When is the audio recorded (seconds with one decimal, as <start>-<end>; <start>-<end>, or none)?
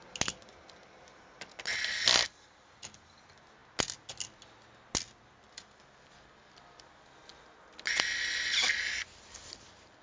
0.0-10.0